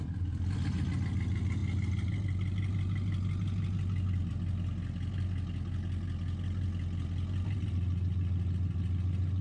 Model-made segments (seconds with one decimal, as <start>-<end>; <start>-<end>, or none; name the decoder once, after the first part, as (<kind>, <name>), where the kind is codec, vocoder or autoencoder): none